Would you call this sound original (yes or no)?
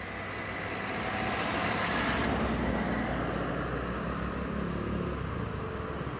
yes